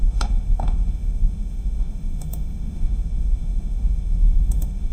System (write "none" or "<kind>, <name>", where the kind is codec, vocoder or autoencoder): autoencoder, DAC-VAE